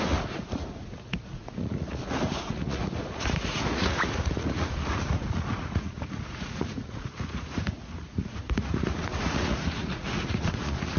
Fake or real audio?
fake